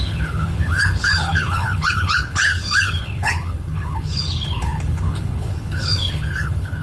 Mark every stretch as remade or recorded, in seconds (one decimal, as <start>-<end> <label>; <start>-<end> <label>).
0.0-6.8 remade